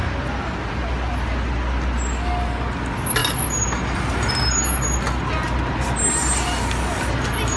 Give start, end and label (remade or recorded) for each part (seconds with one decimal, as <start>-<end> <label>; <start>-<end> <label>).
0.0-7.6 recorded